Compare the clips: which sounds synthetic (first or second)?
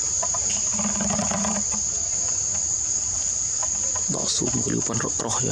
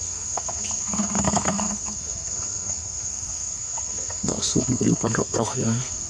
second